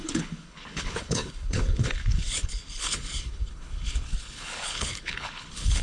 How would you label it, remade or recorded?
remade